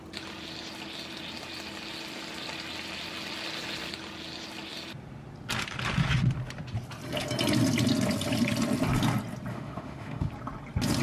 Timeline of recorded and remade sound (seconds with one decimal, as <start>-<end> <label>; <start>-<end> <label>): 0.0-9.5 recorded; 9.5-10.3 remade; 10.3-11.0 recorded